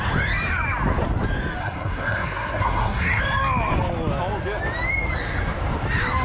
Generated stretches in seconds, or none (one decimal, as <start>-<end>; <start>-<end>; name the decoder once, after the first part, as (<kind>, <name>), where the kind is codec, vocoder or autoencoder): 1.6-3.2 (codec, SNAC)